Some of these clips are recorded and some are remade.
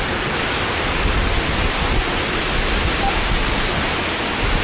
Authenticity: recorded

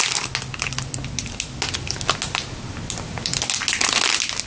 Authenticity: recorded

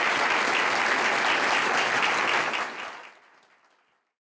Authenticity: recorded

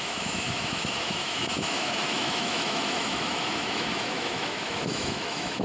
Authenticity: remade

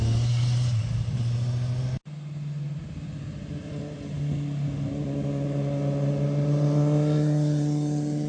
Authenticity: recorded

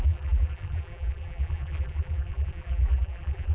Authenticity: remade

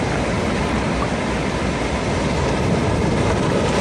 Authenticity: recorded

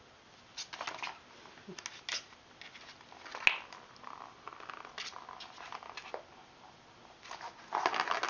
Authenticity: recorded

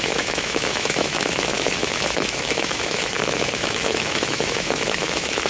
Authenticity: remade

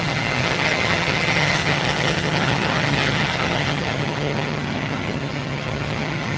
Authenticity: remade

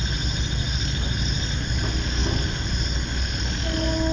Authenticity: recorded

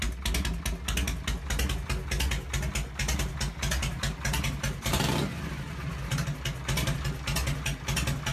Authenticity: recorded